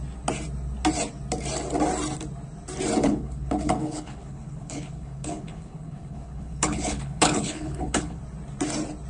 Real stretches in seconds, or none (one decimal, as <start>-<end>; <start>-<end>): 0.0-3.0; 8.2-9.1